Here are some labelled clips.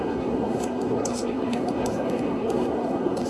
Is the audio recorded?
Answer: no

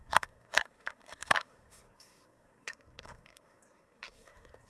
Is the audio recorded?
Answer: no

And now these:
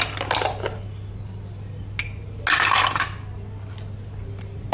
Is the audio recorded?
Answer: yes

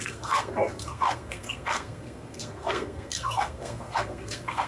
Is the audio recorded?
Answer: no